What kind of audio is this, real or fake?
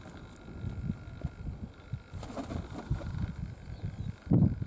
real